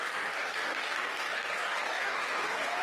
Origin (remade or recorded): remade